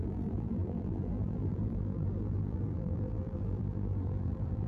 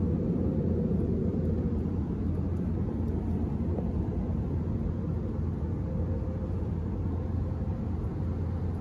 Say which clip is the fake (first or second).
first